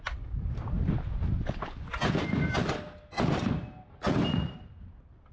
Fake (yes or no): no